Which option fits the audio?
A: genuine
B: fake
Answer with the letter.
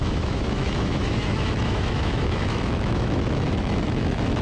B